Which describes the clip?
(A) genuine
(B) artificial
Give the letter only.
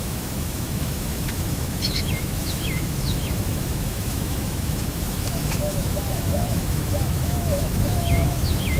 B